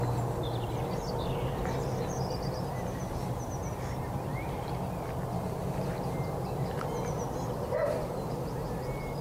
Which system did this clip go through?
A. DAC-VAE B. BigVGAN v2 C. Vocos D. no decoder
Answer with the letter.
D